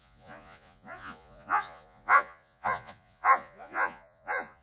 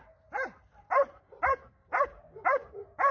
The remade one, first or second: first